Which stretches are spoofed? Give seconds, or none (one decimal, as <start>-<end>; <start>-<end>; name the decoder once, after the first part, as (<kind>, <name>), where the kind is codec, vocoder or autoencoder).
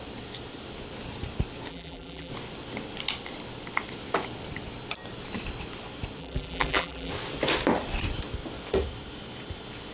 1.7-2.3 (vocoder, BigVGAN v2); 6.2-7.1